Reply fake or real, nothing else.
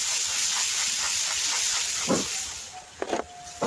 real